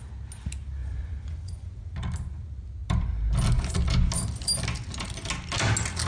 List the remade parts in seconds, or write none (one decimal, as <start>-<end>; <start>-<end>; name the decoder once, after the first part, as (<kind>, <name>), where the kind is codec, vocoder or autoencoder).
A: 0.8-1.8 (vocoder, Vocos)